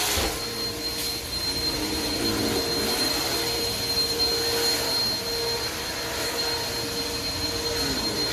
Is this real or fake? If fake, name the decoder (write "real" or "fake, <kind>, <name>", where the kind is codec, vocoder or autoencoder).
real